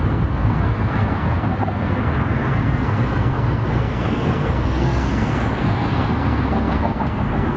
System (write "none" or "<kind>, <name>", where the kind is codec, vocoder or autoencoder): codec, SNAC